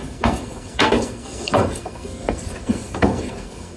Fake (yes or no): yes